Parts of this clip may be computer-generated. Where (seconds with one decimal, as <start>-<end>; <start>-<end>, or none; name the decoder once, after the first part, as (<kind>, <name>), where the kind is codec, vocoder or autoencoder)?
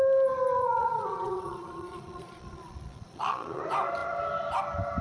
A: 0.6-3.6 (vocoder, Vocos)